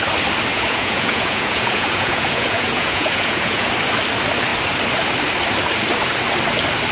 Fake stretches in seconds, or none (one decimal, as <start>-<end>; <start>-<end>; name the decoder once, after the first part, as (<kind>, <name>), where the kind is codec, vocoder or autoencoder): 0.5-3.7 (vocoder, Vocos)